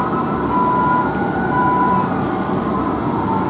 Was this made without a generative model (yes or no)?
yes